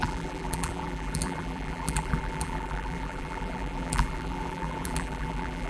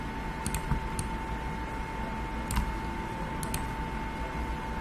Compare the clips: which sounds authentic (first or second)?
second